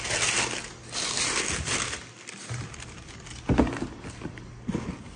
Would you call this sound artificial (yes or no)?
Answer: no